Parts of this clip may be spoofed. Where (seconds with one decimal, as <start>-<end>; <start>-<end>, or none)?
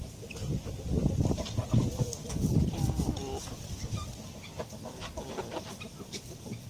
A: 5.9-6.7